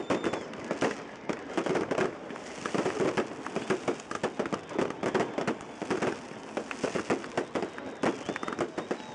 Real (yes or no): yes